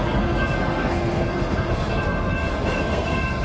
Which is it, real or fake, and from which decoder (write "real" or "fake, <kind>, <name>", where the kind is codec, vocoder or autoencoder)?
fake, codec, SNAC